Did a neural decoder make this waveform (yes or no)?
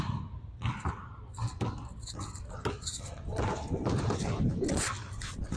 no